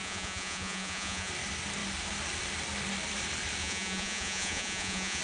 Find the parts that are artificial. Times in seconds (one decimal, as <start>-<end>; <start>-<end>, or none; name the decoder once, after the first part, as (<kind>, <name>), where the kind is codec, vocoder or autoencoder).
0.0-1.3 (vocoder, Vocos); 3.6-5.2